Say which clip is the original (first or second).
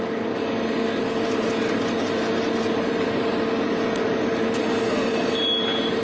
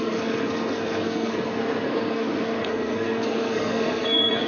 first